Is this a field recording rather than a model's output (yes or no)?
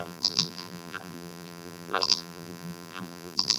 no